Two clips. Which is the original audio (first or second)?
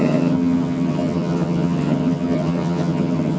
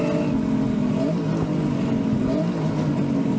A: second